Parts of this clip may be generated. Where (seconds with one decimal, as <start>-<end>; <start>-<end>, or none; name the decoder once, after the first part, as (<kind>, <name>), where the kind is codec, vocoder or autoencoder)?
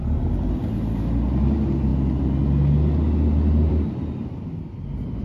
none